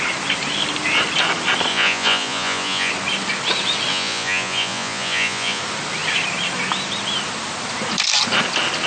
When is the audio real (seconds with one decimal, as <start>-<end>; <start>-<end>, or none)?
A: 0.0-1.7; 2.9-3.9; 5.6-8.9